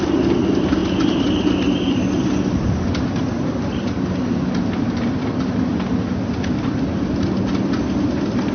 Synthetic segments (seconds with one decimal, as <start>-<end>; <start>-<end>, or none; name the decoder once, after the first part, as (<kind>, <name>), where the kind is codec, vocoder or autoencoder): none